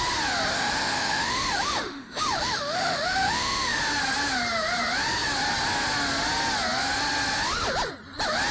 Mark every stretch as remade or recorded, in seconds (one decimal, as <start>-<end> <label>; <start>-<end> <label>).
0.0-0.5 recorded; 0.5-3.8 remade; 3.8-8.5 recorded